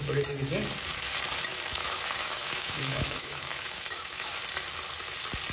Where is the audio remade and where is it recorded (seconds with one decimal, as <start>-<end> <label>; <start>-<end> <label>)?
0.0-1.5 recorded; 1.5-4.4 remade; 4.4-5.5 recorded